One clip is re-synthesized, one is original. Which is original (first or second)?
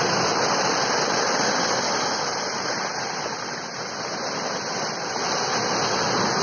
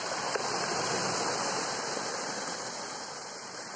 first